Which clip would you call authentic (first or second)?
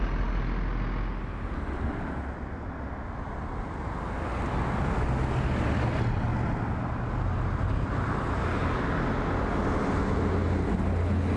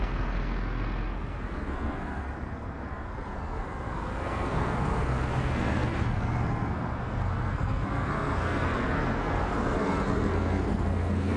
first